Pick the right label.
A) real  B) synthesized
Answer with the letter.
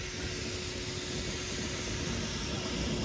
A